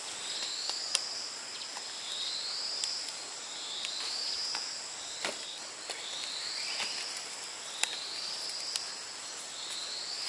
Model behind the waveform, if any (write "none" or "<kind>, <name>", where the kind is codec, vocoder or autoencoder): none